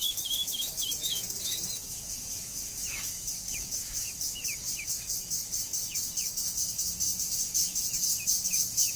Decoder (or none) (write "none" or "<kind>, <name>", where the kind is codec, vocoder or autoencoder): autoencoder, DAC-VAE